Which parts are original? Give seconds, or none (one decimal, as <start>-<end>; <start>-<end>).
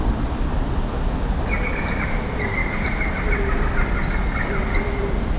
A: 0.0-5.4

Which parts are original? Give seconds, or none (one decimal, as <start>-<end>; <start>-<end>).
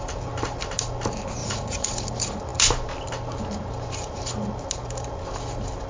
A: 0.0-1.4; 1.9-5.9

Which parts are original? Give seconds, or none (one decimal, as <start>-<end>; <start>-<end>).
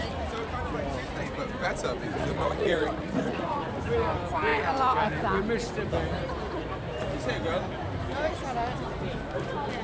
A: 0.0-2.1; 3.6-9.8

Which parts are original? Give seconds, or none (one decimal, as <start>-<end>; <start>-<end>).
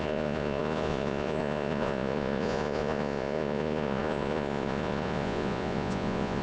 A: none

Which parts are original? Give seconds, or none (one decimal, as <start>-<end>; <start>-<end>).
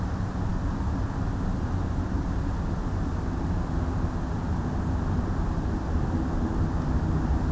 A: 0.0-7.5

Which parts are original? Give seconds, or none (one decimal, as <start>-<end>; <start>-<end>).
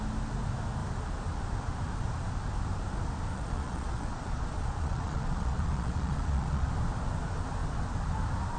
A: 0.0-3.3; 6.7-8.6